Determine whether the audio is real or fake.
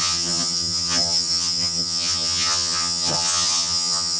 fake